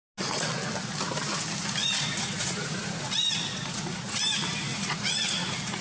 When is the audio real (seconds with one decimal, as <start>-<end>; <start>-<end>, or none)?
0.0-1.8; 4.2-4.7